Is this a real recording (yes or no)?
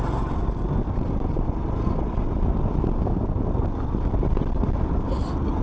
yes